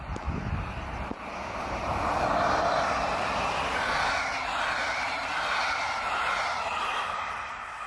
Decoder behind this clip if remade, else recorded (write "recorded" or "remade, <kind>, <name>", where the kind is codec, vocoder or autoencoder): recorded